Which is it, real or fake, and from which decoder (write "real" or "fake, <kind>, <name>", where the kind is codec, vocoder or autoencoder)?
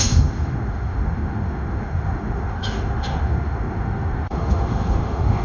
fake, autoencoder, DAC-VAE